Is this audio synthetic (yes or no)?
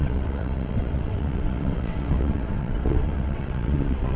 yes